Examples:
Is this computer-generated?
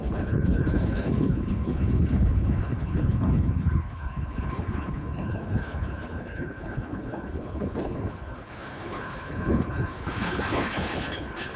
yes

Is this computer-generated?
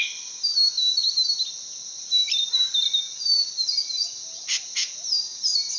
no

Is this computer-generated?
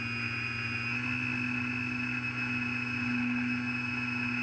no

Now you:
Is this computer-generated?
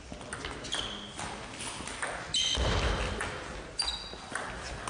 no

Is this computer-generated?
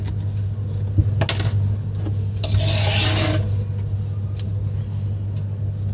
no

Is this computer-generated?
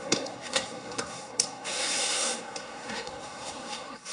yes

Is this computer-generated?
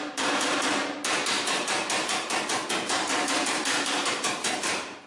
yes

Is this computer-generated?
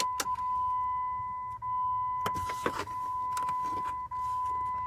no